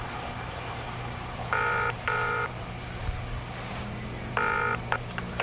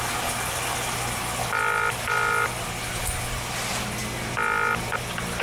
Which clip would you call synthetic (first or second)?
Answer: first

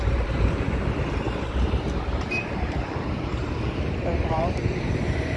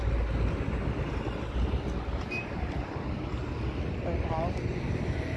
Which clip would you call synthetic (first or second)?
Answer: first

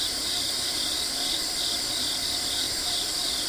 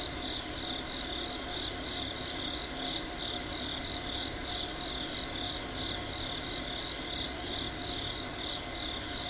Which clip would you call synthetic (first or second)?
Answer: first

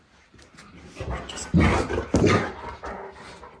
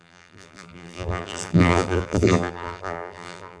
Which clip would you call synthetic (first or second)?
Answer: second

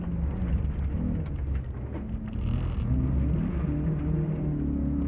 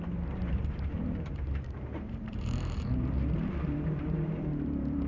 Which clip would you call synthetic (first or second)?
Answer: second